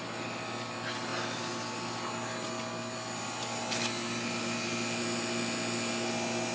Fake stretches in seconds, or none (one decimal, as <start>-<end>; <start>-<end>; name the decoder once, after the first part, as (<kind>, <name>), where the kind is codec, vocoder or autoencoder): none